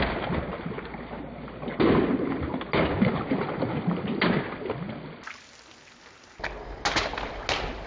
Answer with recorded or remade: recorded